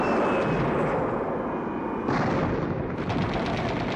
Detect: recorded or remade recorded